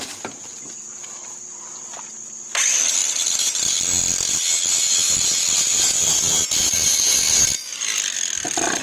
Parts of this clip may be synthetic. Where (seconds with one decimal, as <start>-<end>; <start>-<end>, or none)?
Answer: none